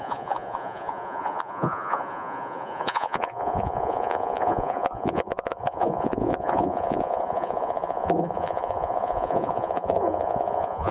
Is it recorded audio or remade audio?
remade